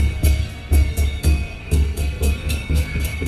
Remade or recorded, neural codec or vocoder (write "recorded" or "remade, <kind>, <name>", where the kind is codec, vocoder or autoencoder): remade, codec, SNAC